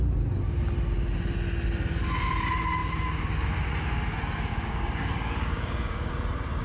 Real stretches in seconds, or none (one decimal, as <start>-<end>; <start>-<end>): 0.0-4.5; 6.1-6.6